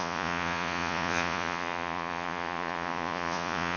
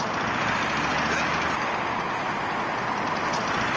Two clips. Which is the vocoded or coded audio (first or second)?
first